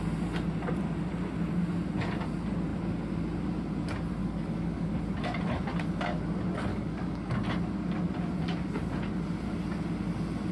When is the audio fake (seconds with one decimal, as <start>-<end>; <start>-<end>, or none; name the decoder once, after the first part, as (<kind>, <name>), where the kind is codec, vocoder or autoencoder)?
4.2-5.0 (codec, DAC); 6.7-7.3